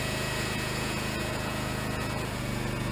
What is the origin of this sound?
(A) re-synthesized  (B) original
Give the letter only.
A